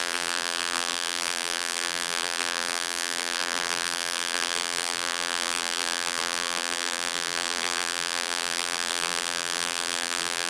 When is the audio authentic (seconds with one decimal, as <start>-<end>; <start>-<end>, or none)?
none